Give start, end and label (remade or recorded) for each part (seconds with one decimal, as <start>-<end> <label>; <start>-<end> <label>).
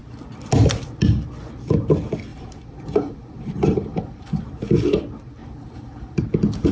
0.0-2.3 recorded; 2.3-4.4 remade; 4.4-5.4 recorded; 5.4-6.2 remade; 6.2-6.7 recorded